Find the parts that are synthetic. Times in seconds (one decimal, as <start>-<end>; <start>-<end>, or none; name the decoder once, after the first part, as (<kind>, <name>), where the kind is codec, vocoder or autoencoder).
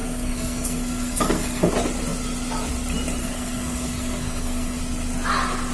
0.0-1.7 (codec, SNAC); 3.2-4.8